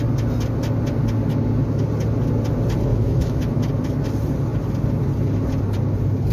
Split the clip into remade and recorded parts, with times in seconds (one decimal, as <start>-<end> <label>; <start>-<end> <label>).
0.0-2.9 recorded; 2.9-3.6 remade; 3.6-6.3 recorded